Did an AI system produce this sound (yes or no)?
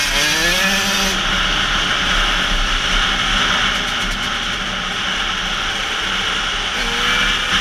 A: no